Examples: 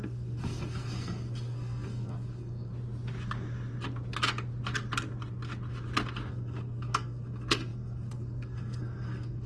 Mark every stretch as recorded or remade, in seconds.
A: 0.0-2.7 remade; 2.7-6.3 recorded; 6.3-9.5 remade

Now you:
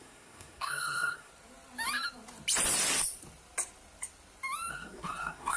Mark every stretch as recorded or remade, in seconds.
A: 0.0-1.3 remade; 1.3-4.7 recorded; 4.7-5.6 remade